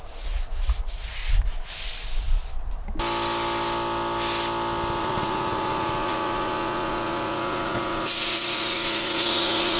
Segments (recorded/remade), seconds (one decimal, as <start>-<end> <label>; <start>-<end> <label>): 0.0-1.2 remade; 1.2-5.0 recorded; 5.0-9.8 remade